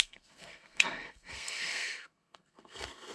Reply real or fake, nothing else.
fake